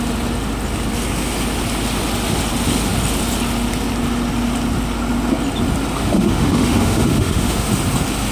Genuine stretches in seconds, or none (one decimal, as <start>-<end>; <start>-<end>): 0.0-6.0; 7.7-8.3

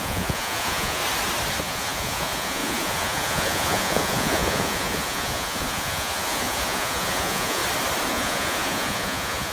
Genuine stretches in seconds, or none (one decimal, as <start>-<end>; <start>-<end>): 1.0-1.6; 7.6-8.1

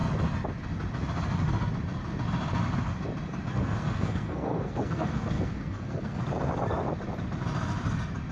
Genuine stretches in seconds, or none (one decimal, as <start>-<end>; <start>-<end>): 0.0-3.5; 6.2-8.3

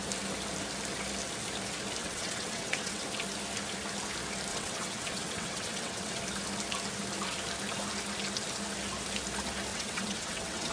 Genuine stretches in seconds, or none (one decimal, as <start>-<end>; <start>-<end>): 0.0-2.0; 3.0-4.5; 6.2-9.7

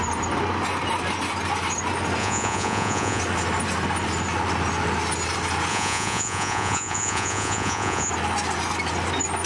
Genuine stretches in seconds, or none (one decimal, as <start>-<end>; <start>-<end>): 0.0-2.2; 3.2-5.7; 8.1-9.5